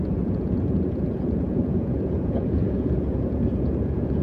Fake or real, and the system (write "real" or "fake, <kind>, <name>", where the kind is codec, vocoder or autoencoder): fake, vocoder, Vocos